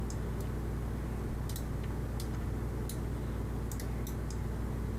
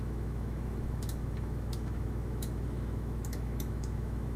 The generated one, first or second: second